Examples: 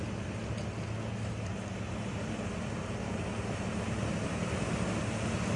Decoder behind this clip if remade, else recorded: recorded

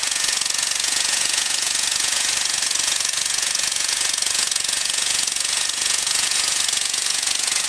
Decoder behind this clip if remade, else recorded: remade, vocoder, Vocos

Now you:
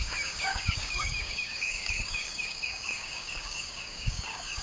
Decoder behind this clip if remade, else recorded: remade, codec, DAC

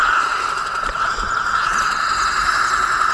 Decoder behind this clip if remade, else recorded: recorded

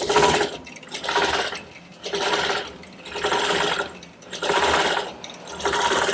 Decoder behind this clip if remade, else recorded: remade, vocoder, BigVGAN v2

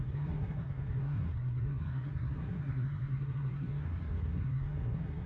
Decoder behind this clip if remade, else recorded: remade, codec, SNAC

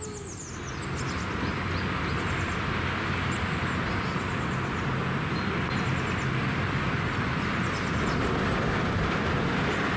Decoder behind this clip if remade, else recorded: recorded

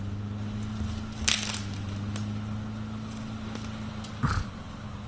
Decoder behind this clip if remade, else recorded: recorded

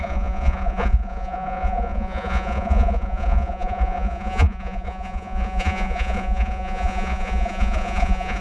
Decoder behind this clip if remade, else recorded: remade, vocoder, Vocos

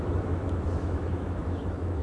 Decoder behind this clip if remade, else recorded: remade, autoencoder, DAC-VAE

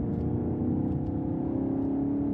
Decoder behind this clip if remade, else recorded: recorded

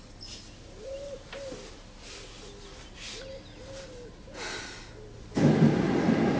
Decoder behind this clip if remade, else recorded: recorded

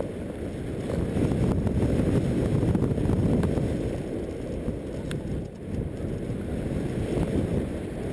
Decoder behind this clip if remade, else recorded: recorded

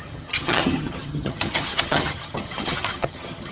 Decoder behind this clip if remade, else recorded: remade, vocoder, HiFi-GAN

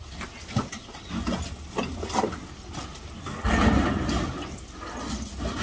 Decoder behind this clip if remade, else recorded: recorded